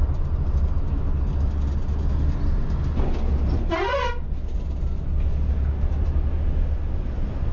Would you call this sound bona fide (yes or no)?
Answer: yes